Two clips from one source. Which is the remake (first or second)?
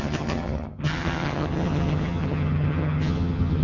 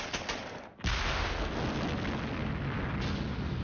first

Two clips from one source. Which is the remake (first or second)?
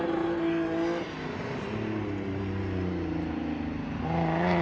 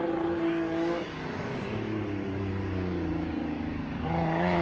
second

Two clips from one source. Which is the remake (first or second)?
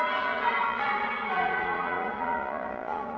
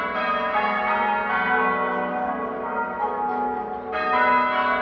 first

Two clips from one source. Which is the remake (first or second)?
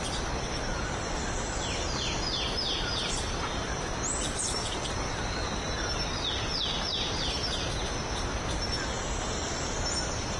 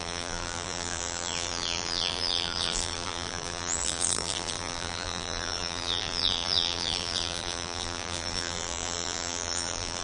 second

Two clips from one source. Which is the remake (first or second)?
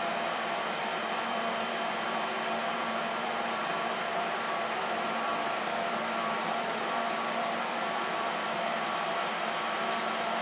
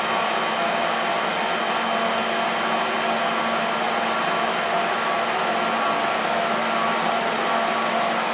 first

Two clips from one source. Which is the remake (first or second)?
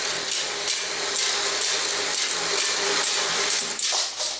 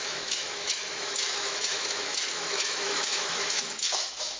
second